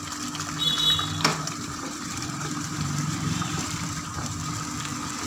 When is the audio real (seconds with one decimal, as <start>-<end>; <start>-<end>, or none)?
0.0-1.3; 4.5-5.3